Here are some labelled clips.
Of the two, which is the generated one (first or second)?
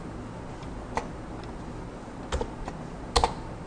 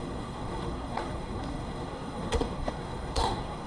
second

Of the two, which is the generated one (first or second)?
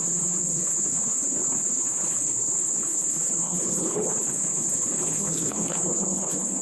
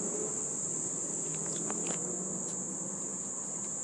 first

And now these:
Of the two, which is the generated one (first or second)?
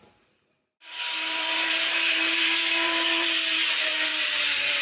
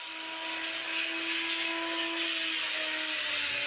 first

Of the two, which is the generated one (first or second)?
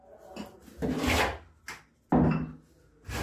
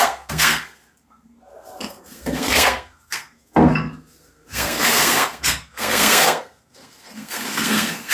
second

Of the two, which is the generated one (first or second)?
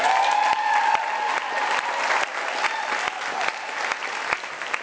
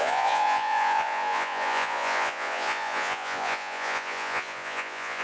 second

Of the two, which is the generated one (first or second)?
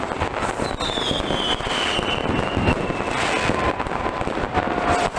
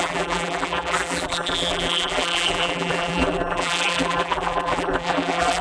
second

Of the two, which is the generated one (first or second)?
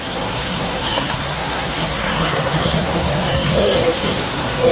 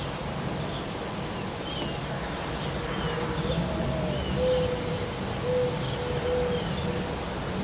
first